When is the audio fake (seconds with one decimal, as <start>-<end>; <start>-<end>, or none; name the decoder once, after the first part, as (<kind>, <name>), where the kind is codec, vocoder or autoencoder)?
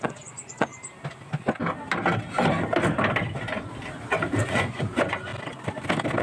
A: 0.0-0.7 (vocoder, Vocos); 4.4-5.3